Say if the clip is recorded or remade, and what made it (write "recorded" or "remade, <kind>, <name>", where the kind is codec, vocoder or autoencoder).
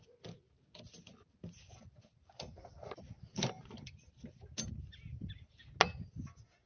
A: recorded